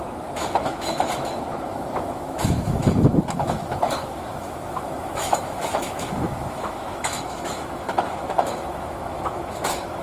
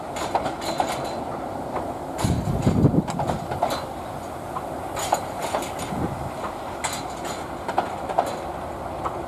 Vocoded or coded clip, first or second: first